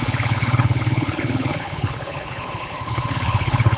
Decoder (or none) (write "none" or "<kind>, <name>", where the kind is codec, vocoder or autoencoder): codec, HILCodec